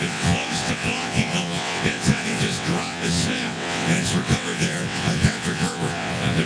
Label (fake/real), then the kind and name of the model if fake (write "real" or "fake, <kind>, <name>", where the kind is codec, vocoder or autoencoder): fake, vocoder, WaveNeXt